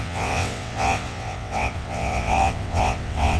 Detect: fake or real fake